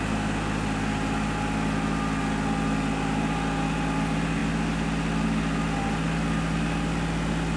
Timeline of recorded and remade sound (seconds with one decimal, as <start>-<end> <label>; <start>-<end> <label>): 0.0-7.6 recorded